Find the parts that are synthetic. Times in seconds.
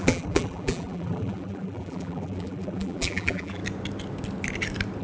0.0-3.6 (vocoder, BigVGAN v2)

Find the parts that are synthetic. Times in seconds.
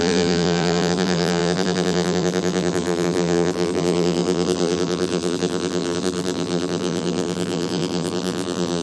0.0-8.8 (vocoder, BigVGAN v2)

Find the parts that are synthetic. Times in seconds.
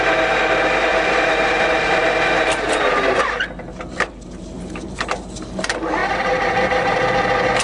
0.9-5.0 (vocoder, BigVGAN v2); 6.0-7.1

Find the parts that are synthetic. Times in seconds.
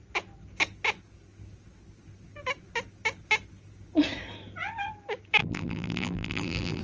5.4-6.8 (vocoder, BigVGAN v2)